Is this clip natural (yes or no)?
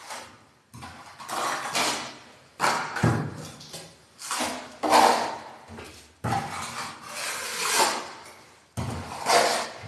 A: yes